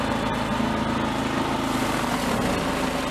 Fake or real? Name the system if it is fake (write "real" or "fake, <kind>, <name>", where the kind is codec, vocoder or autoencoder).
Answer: real